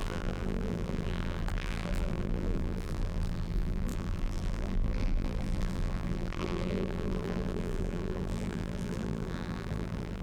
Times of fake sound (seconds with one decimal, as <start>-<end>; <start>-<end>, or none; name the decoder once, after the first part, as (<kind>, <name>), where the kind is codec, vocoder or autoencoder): 0.0-10.2 (vocoder, BigVGAN v2)